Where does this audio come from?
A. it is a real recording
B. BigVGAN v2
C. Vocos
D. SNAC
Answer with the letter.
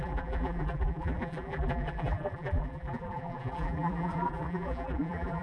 B